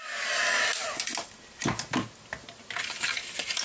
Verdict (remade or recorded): recorded